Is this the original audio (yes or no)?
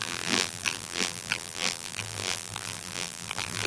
no